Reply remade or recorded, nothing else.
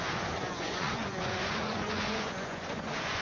remade